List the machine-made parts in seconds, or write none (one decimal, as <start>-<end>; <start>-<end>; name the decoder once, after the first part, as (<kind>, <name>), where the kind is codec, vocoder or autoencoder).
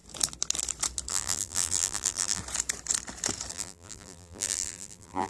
1.1-2.4 (vocoder, BigVGAN v2); 3.5-5.3